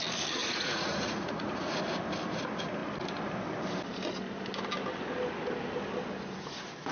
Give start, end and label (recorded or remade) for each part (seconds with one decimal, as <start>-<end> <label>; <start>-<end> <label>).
0.0-0.4 recorded; 0.4-1.8 remade; 1.8-6.9 recorded